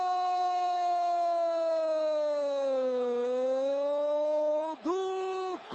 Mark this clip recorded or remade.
remade